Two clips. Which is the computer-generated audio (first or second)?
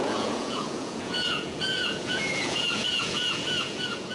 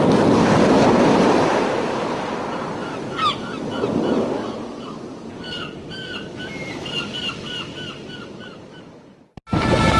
first